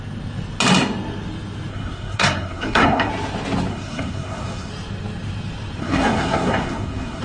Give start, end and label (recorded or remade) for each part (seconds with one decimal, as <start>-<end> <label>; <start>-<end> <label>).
0.0-1.7 recorded; 1.7-3.1 remade; 3.1-3.7 recorded; 3.7-4.7 remade; 4.7-5.8 recorded; 5.8-7.2 remade